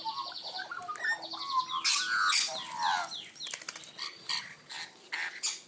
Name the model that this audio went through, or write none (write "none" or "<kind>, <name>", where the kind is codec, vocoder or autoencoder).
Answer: none